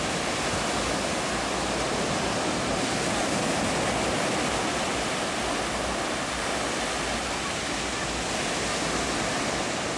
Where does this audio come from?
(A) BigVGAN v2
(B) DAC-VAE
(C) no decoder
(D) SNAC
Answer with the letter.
C